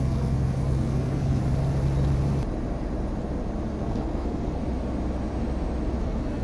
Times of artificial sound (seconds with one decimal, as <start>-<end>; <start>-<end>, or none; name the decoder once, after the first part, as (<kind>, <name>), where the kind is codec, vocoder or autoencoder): 0.0-1.4 (codec, SNAC); 3.8-4.6; 6.0-6.4